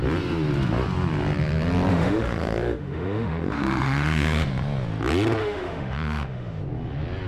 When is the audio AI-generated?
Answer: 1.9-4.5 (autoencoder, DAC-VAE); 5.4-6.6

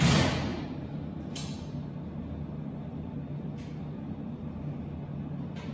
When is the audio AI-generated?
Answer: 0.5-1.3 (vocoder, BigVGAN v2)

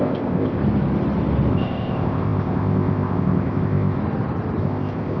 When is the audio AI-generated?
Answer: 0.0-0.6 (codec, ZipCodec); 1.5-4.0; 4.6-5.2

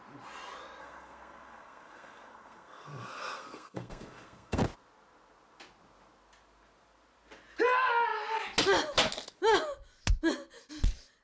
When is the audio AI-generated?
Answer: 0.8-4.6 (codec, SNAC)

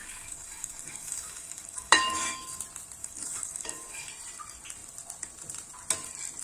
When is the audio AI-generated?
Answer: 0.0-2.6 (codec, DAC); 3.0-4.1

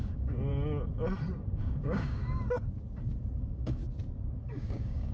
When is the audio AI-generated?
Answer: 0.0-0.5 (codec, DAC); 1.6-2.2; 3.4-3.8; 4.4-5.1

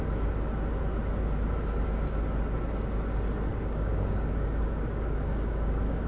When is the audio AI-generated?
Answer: 3.5-6.1 (codec, DAC)